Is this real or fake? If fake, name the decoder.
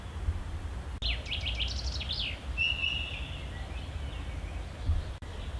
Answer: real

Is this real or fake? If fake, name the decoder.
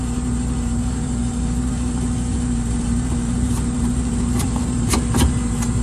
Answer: fake, vocoder, BigVGAN v2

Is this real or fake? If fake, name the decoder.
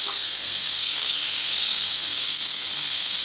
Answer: fake, codec, SNAC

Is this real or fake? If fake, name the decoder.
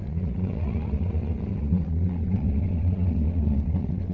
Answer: fake, vocoder, WaveNeXt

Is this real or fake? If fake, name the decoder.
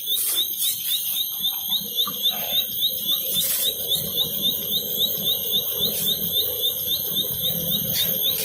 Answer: real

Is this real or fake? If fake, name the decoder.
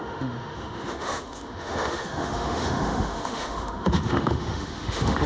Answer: fake, autoencoder, DAC-VAE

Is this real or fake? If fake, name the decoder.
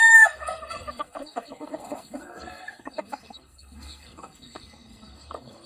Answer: fake, codec, SNAC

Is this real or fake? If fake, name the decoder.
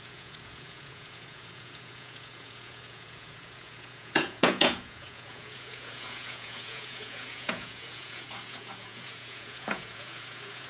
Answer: fake, vocoder, Vocos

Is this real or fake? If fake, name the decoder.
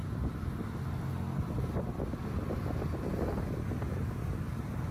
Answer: real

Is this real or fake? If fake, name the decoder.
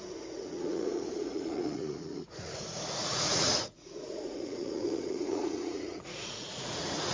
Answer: fake, vocoder, Vocos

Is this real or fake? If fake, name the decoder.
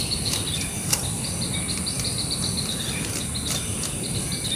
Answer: fake, vocoder, BigVGAN v2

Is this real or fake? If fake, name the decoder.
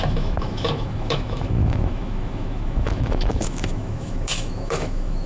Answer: fake, autoencoder, DAC-VAE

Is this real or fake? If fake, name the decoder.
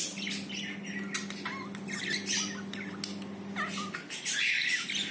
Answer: real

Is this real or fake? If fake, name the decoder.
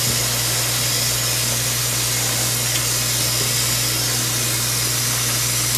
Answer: real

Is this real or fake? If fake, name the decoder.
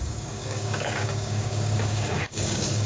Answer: fake, codec, DAC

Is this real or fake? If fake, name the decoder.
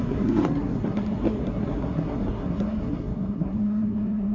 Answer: fake, codec, SNAC